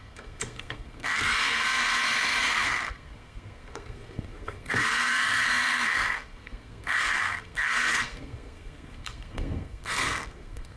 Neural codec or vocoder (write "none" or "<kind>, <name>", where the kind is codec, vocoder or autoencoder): codec, SNAC